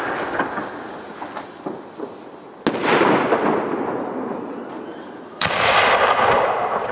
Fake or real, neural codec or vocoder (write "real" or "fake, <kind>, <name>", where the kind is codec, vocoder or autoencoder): real